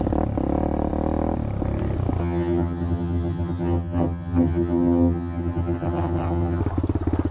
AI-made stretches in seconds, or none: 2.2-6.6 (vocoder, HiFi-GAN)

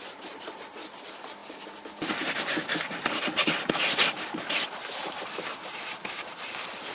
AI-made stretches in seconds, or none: none